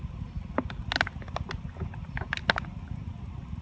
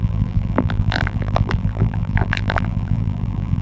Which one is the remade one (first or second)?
second